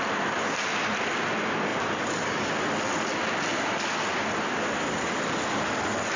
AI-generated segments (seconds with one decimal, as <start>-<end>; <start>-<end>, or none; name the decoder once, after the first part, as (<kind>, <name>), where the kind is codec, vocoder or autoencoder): 1.7-2.5 (vocoder, BigVGAN v2)